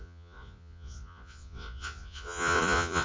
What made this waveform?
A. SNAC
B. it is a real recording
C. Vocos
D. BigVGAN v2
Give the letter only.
C